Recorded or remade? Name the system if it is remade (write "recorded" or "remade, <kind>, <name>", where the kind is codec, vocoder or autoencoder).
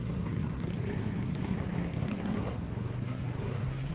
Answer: remade, codec, SNAC